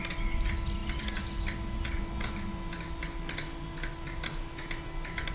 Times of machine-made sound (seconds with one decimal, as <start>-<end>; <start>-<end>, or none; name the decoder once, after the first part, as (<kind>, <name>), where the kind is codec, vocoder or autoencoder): none